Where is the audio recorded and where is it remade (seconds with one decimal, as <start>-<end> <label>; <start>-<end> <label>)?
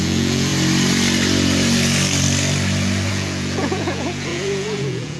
0.0-0.5 remade; 0.5-3.1 recorded; 3.1-5.2 remade